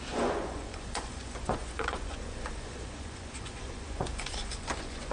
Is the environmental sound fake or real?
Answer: fake